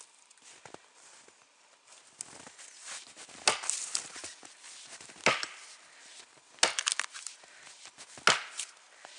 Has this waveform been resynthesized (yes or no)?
no